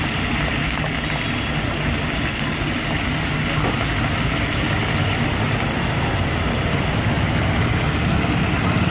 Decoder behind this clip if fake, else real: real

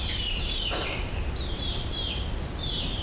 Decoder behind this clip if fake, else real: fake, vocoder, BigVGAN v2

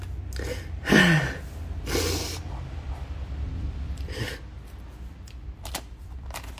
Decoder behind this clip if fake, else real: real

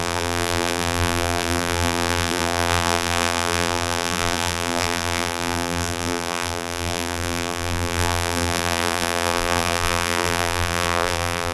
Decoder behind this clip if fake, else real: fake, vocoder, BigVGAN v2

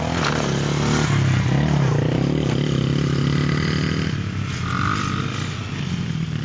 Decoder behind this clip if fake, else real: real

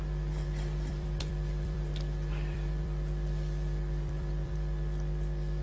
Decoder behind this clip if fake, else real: fake, vocoder, BigVGAN v2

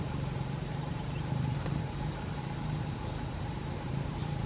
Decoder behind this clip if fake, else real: fake, vocoder, BigVGAN v2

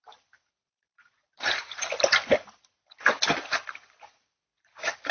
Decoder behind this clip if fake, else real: fake, vocoder, BigVGAN v2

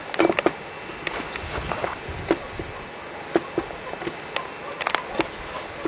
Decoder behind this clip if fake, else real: real